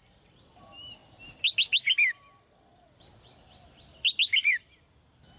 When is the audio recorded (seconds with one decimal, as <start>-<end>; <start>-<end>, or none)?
0.0-5.4